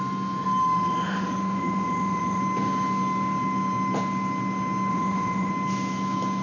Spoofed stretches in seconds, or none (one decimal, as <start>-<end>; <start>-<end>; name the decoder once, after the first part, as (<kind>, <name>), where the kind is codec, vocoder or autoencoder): 0.6-2.4 (autoencoder, DAC-VAE); 4.9-5.5

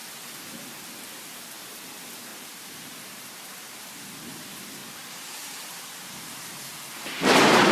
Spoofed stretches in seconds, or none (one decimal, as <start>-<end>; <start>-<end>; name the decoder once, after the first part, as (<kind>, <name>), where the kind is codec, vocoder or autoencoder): 2.3-3.8 (vocoder, BigVGAN v2); 4.8-6.6

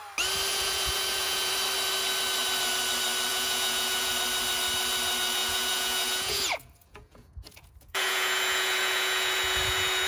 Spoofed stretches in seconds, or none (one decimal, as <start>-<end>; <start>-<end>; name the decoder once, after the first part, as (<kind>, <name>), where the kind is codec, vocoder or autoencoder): 0.5-1.5 (vocoder, Vocos); 3.3-4.1; 5.4-10.1

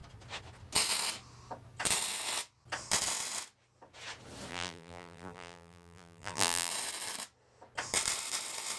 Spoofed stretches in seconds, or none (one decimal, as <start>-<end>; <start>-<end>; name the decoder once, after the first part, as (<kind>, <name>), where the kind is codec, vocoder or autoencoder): 4.5-6.7 (vocoder, BigVGAN v2)

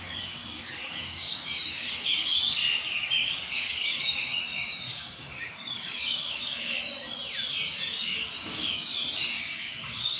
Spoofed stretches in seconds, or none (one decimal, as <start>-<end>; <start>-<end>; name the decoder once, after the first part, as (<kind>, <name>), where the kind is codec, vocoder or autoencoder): 0.0-2.6 (codec, DAC); 3.1-7.0; 8.0-8.9; 9.4-10.2

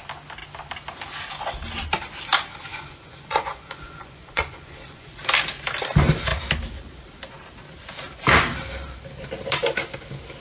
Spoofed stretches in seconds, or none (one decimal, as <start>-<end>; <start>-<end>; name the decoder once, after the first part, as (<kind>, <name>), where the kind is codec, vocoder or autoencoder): 2.7-5.2 (vocoder, Vocos)